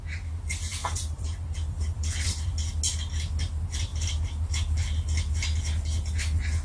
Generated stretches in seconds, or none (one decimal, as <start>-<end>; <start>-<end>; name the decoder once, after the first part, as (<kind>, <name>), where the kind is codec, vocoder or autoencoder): 0.7-2.7 (vocoder, BigVGAN v2)